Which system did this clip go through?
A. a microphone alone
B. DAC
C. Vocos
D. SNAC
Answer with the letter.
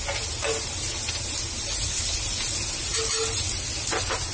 A